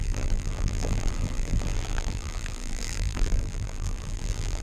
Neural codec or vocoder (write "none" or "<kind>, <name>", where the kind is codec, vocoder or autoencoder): vocoder, BigVGAN v2